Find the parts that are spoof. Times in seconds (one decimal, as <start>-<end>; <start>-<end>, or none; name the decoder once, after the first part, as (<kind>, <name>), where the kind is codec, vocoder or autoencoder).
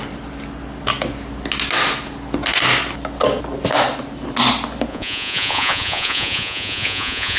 4.9-7.4 (vocoder, Vocos)